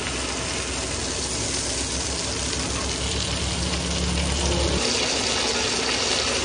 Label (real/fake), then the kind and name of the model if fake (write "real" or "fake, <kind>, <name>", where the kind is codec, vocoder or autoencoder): real